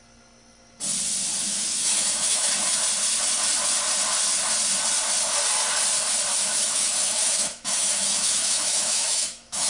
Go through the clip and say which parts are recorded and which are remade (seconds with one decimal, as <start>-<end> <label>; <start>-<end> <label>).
0.0-1.4 recorded; 1.4-2.5 remade; 2.5-6.3 recorded; 6.3-9.7 remade